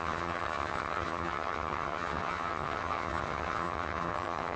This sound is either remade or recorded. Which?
remade